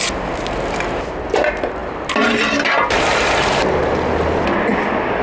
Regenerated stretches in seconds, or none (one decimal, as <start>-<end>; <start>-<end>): none